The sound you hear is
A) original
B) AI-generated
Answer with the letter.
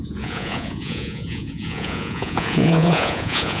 B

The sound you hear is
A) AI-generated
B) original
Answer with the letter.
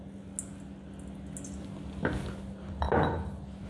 B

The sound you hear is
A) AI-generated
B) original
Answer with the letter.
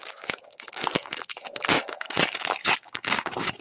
A